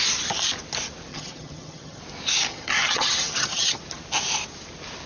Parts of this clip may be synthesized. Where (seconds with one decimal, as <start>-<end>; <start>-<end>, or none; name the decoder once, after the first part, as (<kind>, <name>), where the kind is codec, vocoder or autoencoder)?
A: 1.1-2.0 (vocoder, HiFi-GAN); 2.5-3.8

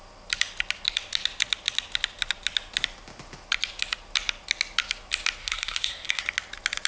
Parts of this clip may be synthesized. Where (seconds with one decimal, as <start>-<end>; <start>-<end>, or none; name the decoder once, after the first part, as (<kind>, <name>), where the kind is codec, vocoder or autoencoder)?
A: 5.4-6.2 (codec, SNAC)

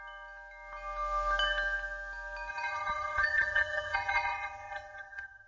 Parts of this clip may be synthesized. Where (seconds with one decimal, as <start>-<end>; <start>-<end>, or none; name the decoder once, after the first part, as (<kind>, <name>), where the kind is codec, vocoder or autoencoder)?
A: 2.5-5.5 (vocoder, HiFi-GAN)

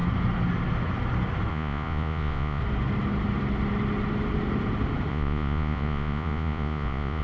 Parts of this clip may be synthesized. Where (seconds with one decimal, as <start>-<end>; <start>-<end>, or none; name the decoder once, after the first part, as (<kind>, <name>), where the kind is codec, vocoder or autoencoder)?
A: 1.5-2.6 (vocoder, Vocos); 5.1-7.2

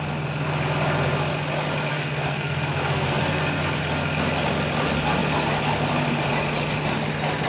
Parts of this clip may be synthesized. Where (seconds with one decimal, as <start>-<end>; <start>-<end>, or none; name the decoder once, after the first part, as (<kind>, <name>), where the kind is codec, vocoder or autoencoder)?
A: 1.9-3.4 (codec, SNAC)

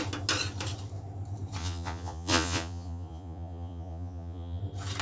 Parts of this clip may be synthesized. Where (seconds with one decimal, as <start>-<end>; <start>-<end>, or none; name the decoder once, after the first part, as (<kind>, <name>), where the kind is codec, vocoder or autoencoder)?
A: 1.6-4.6 (vocoder, Vocos)